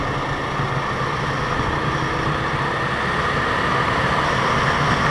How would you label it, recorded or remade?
recorded